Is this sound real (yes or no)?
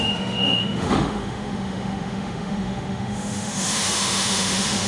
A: no